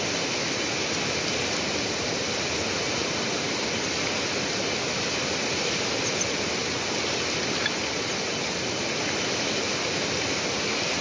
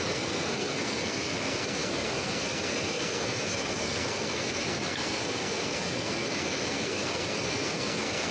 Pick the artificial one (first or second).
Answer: second